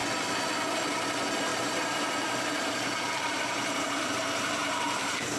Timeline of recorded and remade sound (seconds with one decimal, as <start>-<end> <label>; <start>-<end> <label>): 0.0-1.5 recorded; 1.5-4.1 remade; 4.1-4.6 recorded; 4.6-5.4 remade